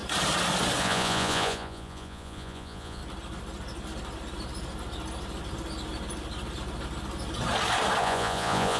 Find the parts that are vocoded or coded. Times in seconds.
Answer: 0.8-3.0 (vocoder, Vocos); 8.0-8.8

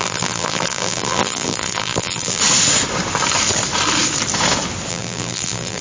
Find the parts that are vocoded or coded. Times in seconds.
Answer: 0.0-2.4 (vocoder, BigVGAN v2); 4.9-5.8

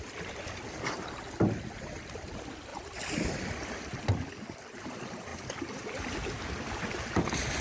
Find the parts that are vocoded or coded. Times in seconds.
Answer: none

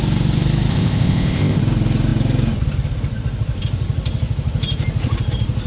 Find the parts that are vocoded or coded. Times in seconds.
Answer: 0.7-1.6 (codec, ZipCodec)